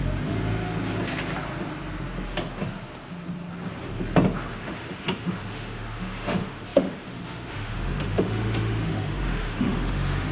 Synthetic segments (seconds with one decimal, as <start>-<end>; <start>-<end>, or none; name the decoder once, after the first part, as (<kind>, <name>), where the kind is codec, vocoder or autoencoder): 4.5-10.3 (autoencoder, DAC-VAE)

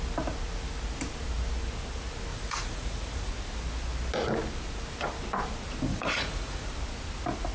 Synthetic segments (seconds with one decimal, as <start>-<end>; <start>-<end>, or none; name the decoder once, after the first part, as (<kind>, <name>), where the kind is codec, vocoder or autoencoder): 2.3-3.3 (vocoder, Vocos); 5.9-6.7

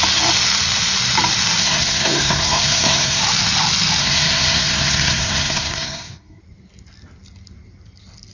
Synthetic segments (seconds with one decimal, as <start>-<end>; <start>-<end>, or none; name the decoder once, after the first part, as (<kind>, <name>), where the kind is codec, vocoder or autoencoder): 1.6-3.2 (codec, SNAC); 4.0-6.4

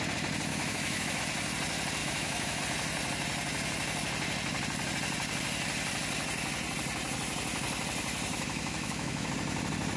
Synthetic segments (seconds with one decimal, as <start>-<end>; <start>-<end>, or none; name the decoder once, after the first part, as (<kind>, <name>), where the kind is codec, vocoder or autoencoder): 0.5-1.2 (autoencoder, DAC-VAE); 2.0-2.6; 8.3-9.3